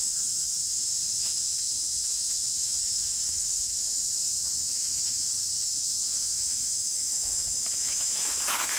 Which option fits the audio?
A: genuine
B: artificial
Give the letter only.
B